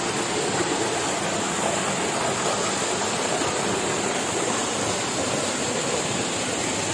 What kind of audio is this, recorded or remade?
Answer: recorded